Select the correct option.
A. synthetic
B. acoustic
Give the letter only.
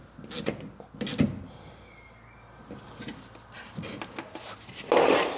B